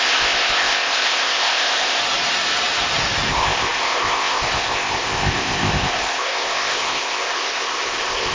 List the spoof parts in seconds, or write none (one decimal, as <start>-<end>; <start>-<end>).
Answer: 0.0-2.0; 3.3-8.3